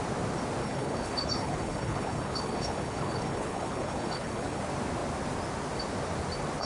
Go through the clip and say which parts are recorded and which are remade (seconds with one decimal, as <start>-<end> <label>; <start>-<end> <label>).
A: 0.0-0.6 recorded; 0.6-4.6 remade; 4.6-6.7 recorded